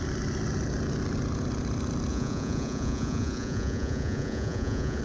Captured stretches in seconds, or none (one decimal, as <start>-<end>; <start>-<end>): 0.0-2.1